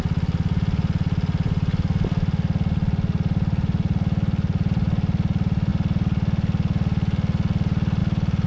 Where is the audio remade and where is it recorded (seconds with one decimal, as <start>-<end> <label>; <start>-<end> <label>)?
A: 0.0-8.5 recorded